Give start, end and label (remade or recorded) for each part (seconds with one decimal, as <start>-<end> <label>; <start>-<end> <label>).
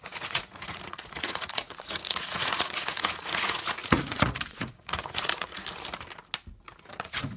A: 0.0-5.6 remade; 5.6-6.8 recorded; 6.8-7.4 remade